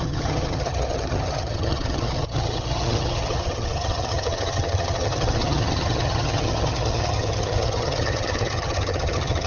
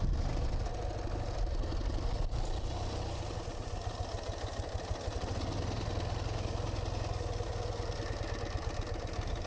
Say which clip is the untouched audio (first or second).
second